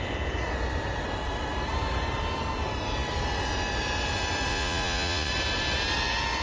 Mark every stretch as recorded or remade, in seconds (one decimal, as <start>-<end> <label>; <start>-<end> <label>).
0.0-4.5 recorded; 4.5-5.3 remade; 5.3-6.4 recorded